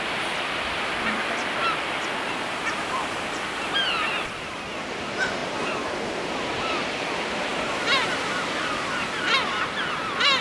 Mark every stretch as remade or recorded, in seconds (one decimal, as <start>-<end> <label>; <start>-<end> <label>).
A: 0.0-10.4 remade